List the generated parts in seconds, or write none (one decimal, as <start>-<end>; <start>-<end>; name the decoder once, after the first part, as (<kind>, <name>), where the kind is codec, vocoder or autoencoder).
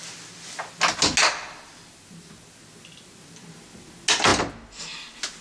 none